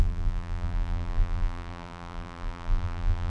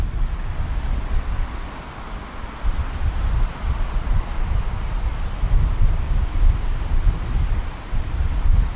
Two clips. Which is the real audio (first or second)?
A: second